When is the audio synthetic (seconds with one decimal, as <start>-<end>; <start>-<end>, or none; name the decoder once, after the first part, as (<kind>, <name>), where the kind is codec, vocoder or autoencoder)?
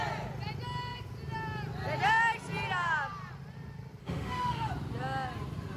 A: 4.0-4.7 (autoencoder, DAC-VAE)